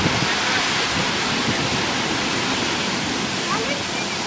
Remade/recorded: recorded